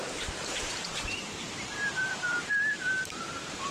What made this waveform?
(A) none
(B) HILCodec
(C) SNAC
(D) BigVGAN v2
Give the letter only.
D